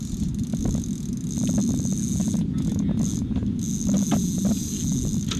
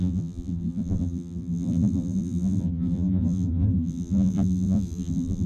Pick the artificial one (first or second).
second